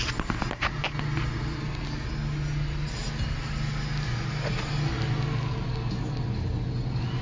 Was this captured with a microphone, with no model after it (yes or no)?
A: yes